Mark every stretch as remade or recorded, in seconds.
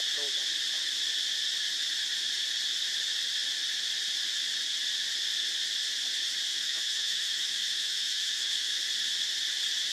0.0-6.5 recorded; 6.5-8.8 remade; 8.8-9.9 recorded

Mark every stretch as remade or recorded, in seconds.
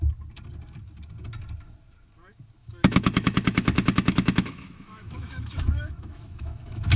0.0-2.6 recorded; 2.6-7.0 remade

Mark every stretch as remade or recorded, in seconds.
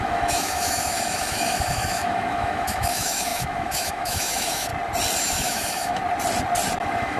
0.0-4.7 remade; 4.7-5.2 recorded; 5.2-6.0 remade; 6.0-6.8 recorded; 6.8-7.2 remade